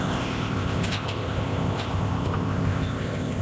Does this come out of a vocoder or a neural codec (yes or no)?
yes